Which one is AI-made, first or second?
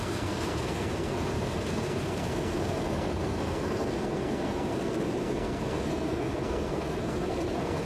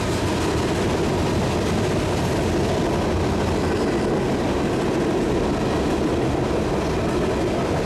first